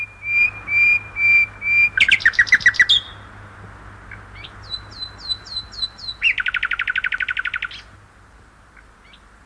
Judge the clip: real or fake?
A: real